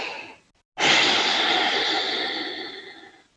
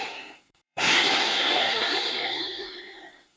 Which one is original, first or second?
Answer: first